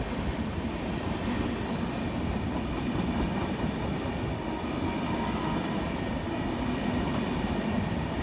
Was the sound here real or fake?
real